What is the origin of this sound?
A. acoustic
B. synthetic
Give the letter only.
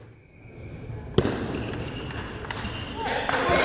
A